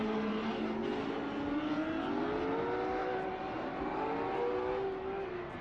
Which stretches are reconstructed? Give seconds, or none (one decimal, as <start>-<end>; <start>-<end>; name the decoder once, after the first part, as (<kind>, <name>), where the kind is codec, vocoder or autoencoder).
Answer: none